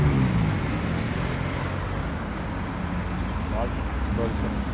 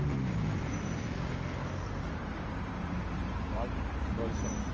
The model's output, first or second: second